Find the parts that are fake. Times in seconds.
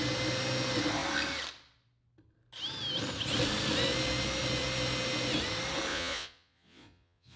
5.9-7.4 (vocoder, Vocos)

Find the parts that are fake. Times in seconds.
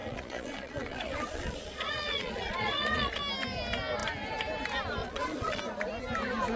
0.0-3.2 (vocoder, Vocos); 5.0-5.6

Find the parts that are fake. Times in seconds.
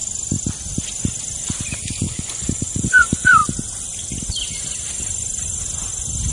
1.9-3.4 (vocoder, Vocos)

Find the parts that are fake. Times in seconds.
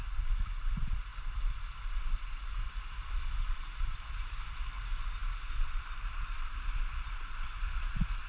none